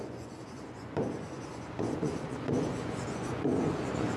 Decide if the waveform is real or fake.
fake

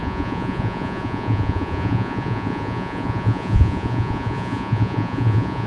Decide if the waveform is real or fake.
fake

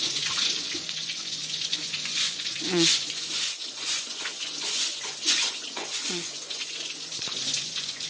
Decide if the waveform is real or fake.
fake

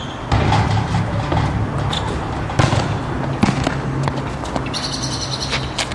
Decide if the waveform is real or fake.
real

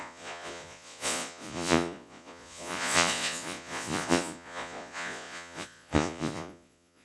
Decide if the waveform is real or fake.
fake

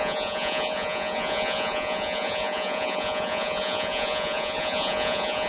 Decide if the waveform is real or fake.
fake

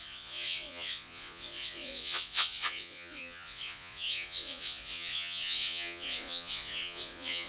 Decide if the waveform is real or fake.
fake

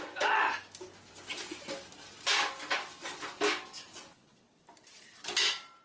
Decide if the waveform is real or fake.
real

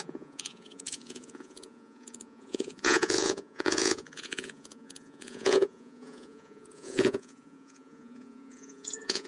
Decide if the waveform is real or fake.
fake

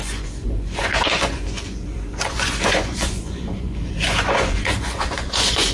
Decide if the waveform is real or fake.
fake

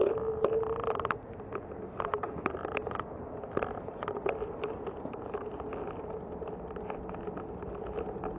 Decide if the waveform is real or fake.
real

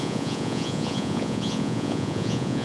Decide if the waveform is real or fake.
fake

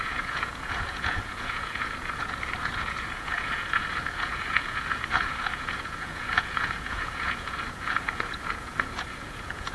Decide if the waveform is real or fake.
fake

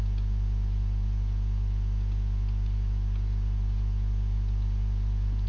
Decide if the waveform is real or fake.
fake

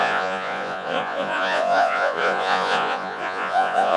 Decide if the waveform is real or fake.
fake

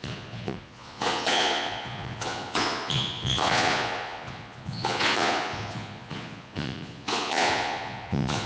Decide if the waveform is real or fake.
fake